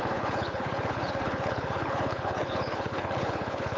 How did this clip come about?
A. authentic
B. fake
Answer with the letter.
B